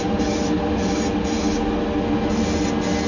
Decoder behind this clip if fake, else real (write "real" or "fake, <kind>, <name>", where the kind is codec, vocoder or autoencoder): real